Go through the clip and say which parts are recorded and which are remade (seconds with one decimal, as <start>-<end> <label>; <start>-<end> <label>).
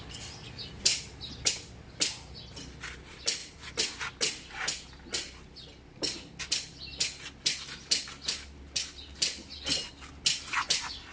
0.0-0.9 recorded; 0.9-1.5 remade; 1.5-11.1 recorded